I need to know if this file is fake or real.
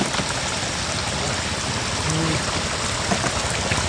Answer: real